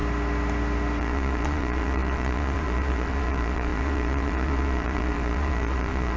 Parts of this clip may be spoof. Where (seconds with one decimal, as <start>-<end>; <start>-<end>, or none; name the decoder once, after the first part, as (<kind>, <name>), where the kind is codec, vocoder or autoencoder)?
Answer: 1.0-6.2 (vocoder, Vocos)